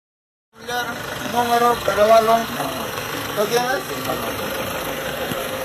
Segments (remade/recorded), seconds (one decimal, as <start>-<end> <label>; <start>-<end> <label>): 0.0-1.2 recorded; 1.2-4.2 remade; 4.2-4.8 recorded; 4.8-5.6 remade